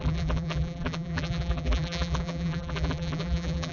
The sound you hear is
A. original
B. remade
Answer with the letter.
B